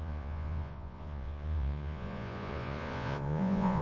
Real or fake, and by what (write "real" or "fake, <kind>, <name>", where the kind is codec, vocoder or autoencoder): fake, vocoder, Vocos